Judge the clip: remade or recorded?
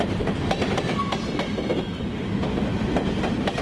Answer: recorded